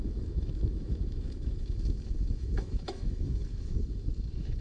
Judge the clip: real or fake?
fake